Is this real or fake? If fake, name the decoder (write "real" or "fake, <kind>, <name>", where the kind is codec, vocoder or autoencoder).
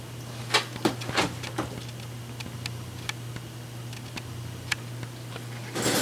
real